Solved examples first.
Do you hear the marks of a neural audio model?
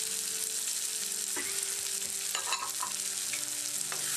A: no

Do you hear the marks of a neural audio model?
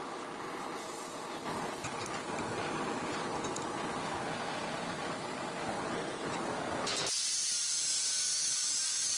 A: no